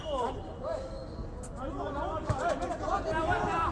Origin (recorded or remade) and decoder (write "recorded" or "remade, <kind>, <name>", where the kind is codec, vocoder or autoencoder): recorded